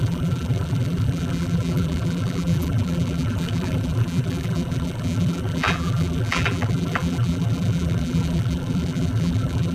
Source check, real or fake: fake